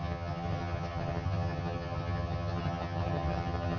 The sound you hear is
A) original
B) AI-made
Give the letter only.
B